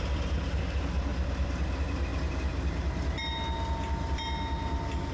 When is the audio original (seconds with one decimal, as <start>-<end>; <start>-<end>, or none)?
0.0-5.1